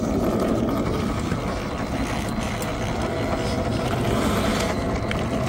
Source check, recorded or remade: recorded